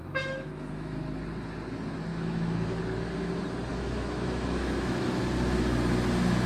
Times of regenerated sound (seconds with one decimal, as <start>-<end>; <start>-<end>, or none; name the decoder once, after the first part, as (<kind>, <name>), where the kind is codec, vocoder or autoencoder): 0.0-1.0 (autoencoder, DAC-VAE); 2.1-2.8; 3.7-5.2